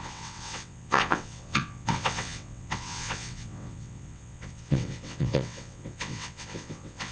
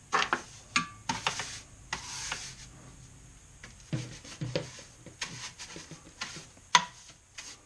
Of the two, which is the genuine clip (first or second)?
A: second